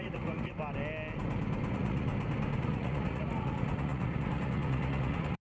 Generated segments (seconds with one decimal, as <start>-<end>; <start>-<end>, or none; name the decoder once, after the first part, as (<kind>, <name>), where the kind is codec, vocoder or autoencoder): 0.0-0.6 (vocoder, Vocos); 1.7-2.1; 2.6-5.4